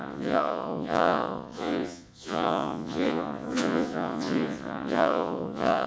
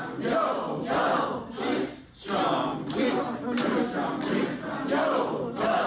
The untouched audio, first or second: second